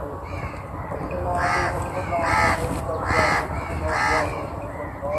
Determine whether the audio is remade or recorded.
recorded